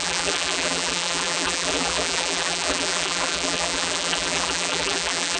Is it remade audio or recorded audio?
remade